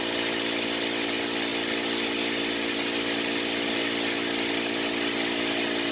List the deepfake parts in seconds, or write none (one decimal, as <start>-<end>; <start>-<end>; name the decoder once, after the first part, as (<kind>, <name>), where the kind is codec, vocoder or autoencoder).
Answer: none